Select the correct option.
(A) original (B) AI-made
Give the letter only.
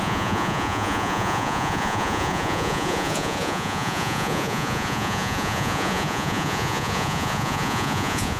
B